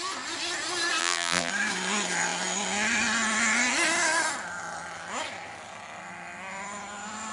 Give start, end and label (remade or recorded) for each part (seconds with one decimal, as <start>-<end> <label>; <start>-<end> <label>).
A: 0.0-1.0 recorded; 1.0-1.5 remade; 1.5-7.3 recorded